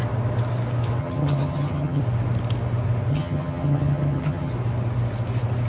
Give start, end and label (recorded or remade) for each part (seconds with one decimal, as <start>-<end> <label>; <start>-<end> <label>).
0.0-1.0 recorded; 1.0-2.0 remade; 2.0-3.1 recorded; 3.1-4.5 remade; 4.5-5.7 recorded